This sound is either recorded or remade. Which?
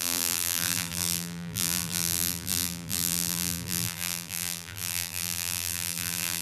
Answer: remade